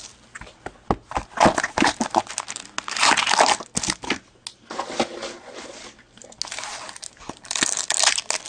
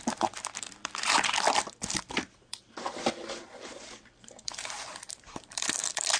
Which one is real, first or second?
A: first